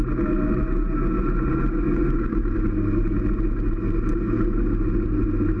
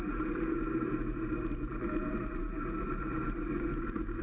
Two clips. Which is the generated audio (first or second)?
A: second